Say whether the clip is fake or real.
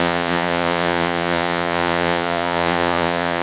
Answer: fake